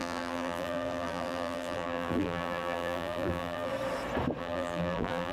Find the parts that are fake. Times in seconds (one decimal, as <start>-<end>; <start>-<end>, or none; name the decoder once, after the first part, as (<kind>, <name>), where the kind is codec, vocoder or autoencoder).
0.0-3.7 (vocoder, BigVGAN v2); 4.4-5.3